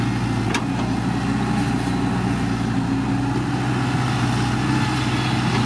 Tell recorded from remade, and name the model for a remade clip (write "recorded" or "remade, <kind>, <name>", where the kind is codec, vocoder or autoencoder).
recorded